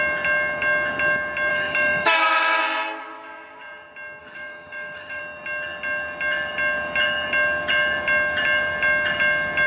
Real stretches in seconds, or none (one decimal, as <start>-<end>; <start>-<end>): 0.0-1.5; 2.6-4.2; 5.2-9.7